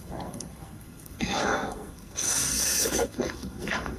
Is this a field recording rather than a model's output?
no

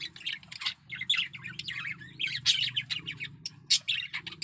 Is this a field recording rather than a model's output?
yes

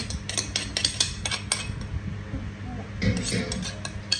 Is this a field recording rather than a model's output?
yes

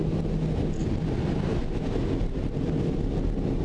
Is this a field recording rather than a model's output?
yes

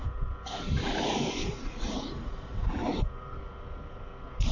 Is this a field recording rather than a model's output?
yes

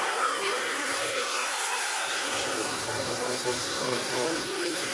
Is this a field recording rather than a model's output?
no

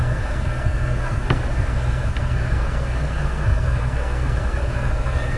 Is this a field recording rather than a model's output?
no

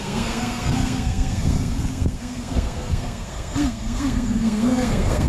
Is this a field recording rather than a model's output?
no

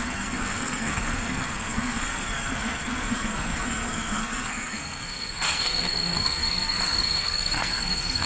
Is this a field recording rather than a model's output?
no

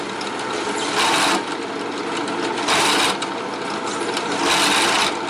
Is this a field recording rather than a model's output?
yes